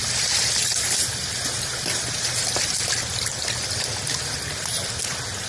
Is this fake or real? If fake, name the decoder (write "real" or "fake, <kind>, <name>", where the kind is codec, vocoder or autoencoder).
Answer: real